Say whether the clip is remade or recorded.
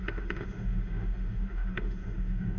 remade